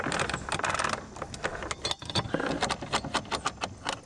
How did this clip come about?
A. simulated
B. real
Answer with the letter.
B